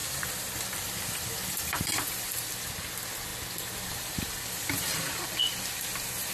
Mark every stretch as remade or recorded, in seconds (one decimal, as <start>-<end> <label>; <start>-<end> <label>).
0.0-2.9 remade; 2.9-6.3 recorded